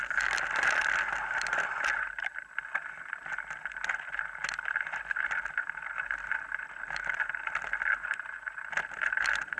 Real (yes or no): yes